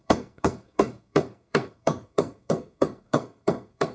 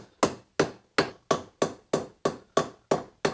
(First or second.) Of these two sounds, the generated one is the first